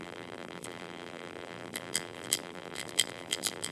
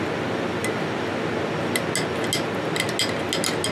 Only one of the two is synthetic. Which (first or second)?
first